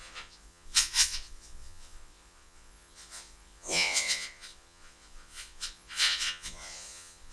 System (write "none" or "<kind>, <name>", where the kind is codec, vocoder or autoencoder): vocoder, Vocos